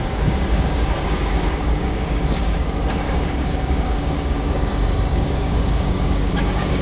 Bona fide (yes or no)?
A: no